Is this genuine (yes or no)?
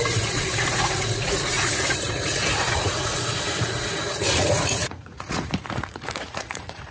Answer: no